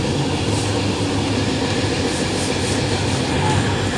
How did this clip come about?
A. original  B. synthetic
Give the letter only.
A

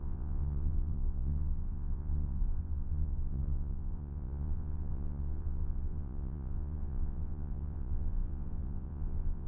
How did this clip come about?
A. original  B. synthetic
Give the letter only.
B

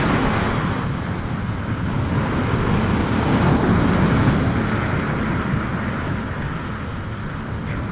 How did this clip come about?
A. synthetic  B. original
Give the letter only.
B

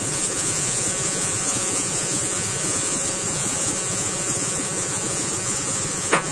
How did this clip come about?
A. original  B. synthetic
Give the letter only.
B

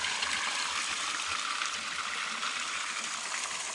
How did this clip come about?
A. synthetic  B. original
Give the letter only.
B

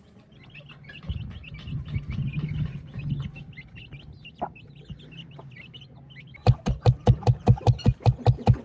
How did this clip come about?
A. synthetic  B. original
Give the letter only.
B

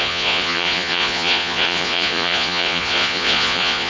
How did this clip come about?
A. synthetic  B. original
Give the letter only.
A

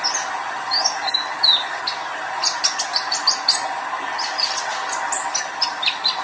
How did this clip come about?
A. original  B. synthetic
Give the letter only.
A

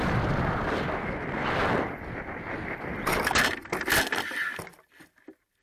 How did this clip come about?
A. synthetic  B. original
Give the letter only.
B